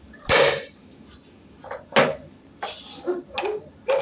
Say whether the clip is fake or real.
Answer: real